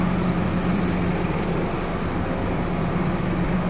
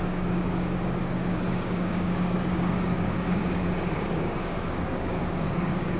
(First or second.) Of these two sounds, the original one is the first